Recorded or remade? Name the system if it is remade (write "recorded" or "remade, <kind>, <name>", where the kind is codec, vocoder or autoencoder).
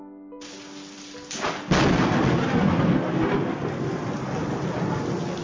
recorded